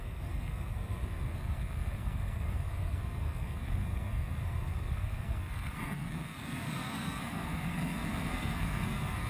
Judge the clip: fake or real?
fake